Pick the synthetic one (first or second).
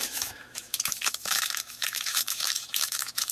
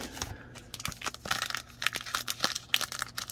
first